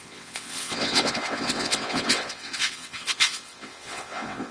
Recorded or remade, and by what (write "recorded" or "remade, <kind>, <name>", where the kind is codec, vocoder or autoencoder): remade, vocoder, WaveNeXt